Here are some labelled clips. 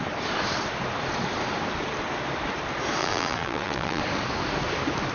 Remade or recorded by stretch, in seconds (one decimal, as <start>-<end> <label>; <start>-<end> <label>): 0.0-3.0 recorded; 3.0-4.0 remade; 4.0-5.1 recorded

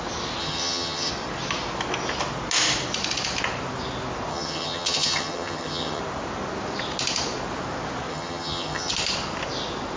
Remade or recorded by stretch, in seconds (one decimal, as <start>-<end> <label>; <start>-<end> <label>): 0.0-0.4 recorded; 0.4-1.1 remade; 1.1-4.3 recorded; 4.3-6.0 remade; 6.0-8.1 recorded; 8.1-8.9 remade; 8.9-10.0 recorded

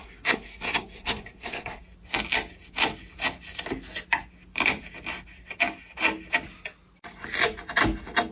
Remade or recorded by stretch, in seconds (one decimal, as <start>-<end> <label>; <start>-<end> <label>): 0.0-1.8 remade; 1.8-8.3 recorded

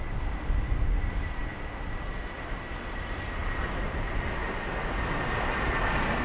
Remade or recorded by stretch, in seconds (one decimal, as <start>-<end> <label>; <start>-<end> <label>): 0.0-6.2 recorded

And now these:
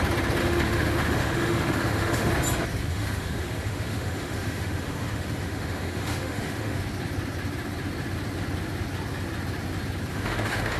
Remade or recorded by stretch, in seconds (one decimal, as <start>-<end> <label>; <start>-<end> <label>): 0.0-0.4 recorded; 0.4-2.3 remade; 2.3-2.9 recorded; 2.9-6.8 remade; 6.8-10.1 recorded; 10.1-10.8 remade

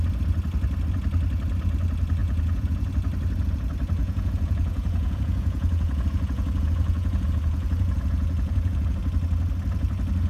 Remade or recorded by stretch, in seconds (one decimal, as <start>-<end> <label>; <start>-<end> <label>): 0.0-2.2 recorded; 2.2-2.9 remade; 2.9-4.0 recorded; 4.0-9.0 remade; 9.0-10.3 recorded

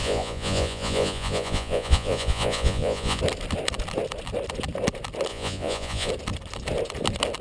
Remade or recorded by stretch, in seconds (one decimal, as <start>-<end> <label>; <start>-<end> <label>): 0.0-3.2 remade; 3.2-5.3 recorded; 5.3-6.1 remade; 6.1-7.4 recorded